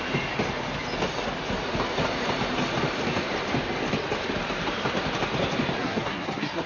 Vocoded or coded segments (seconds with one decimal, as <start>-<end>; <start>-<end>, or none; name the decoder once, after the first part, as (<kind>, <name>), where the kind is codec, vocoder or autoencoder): 5.8-6.7 (codec, SNAC)